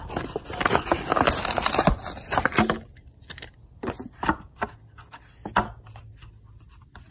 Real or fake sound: real